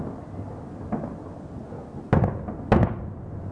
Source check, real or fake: real